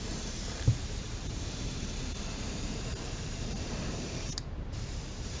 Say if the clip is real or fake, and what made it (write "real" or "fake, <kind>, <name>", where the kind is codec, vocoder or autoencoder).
fake, vocoder, BigVGAN v2